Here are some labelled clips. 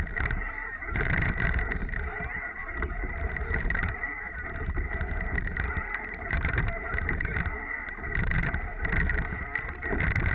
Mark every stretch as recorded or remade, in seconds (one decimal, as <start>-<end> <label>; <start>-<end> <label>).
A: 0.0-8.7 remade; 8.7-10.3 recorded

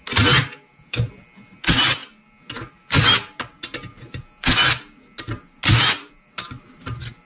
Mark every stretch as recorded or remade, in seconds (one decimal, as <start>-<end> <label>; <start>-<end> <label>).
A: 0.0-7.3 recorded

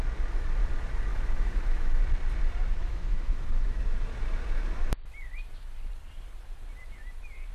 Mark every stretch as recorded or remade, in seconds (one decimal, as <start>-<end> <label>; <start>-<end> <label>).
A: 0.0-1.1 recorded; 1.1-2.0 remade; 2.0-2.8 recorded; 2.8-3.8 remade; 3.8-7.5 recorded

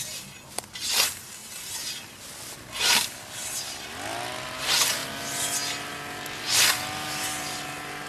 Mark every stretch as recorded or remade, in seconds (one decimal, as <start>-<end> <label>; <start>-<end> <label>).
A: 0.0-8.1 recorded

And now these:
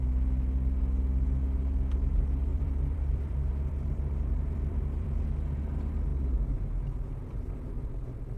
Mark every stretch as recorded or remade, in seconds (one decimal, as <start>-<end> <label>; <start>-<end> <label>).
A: 0.0-2.5 recorded; 2.5-5.2 remade; 5.2-8.4 recorded

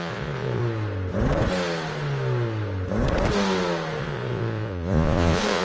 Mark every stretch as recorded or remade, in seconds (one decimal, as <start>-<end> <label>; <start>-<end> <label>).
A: 0.0-0.6 remade; 0.6-4.0 recorded; 4.0-5.6 remade

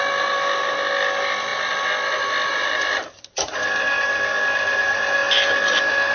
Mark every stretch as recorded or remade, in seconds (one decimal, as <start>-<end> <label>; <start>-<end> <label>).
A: 0.0-6.1 recorded